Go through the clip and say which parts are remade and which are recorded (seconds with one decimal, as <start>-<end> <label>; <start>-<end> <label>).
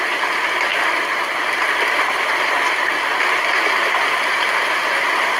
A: 0.0-0.7 recorded; 0.7-2.3 remade; 2.3-5.4 recorded